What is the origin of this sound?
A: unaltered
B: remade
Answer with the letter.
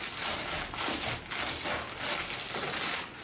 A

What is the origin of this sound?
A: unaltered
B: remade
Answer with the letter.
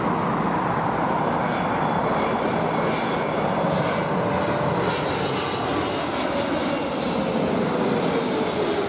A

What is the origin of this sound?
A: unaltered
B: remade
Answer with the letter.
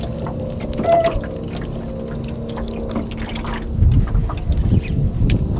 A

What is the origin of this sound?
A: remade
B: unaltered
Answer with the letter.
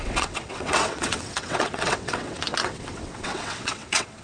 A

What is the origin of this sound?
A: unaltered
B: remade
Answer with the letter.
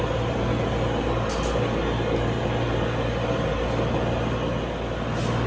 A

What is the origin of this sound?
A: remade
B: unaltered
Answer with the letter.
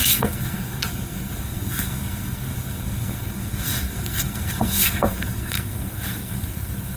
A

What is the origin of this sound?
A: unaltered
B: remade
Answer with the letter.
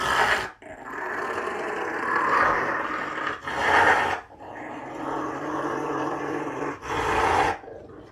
A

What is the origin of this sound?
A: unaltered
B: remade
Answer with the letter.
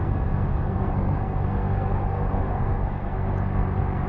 B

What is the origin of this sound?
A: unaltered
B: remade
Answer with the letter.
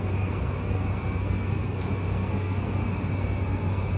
B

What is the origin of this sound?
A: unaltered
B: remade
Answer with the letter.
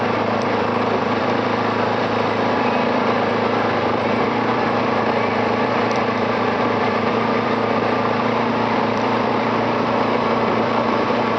B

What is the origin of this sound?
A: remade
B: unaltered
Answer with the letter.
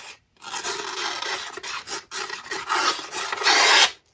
B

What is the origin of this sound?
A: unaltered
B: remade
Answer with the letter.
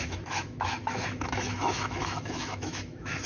B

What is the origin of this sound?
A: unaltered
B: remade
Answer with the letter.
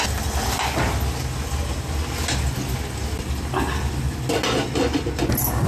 A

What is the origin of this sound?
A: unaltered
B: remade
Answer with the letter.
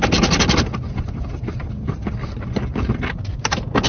A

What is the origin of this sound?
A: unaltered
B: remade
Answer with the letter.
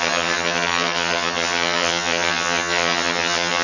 B